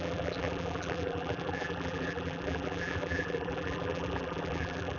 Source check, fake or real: fake